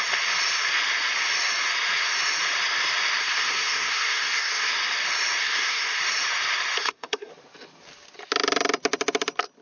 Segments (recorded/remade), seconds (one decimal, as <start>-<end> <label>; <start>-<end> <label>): 0.0-3.2 recorded; 3.2-4.7 remade; 4.7-5.4 recorded; 5.4-6.0 remade; 6.0-6.8 recorded; 6.8-7.3 remade; 7.3-9.6 recorded

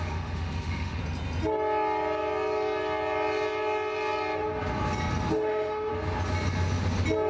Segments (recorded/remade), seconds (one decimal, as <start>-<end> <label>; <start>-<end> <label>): 0.0-1.0 remade; 1.0-5.3 recorded; 5.3-5.9 remade; 5.9-7.3 recorded

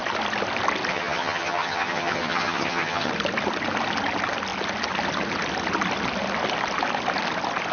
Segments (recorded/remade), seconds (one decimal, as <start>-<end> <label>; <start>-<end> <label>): 0.0-0.9 recorded; 0.9-3.1 remade; 3.1-7.7 recorded

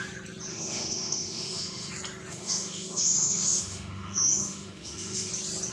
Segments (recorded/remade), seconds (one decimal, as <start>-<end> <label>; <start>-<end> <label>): 0.0-0.5 recorded; 0.5-1.9 remade; 1.9-2.3 recorded; 2.3-5.3 remade; 5.3-5.7 recorded

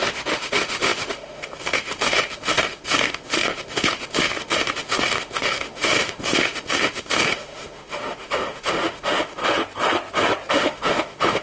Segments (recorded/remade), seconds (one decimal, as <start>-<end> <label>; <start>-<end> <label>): 0.0-9.4 remade; 9.4-10.5 recorded; 10.5-11.4 remade